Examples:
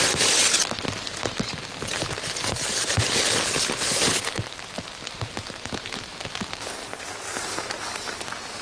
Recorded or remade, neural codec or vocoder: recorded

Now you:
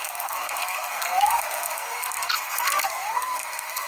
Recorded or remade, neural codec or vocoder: remade, codec, SNAC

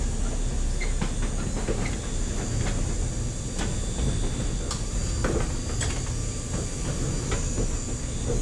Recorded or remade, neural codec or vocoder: recorded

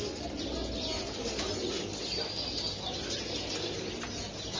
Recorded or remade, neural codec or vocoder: recorded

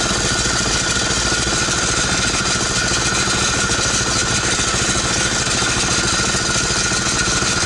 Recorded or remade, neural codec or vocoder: recorded